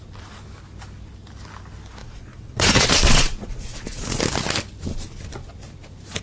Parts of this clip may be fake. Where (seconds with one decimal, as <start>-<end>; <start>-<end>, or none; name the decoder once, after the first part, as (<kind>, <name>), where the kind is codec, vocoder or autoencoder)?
2.0-4.2 (vocoder, Vocos)